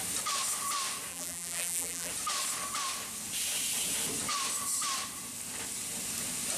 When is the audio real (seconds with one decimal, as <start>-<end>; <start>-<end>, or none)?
0.0-1.1; 2.1-6.6